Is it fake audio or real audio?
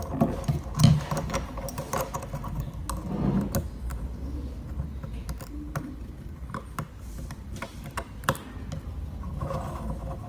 real